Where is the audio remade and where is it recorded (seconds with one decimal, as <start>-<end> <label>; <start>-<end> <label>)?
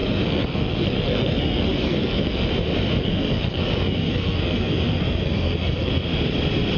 0.0-2.5 remade; 2.5-3.0 recorded; 3.0-5.9 remade; 5.9-6.8 recorded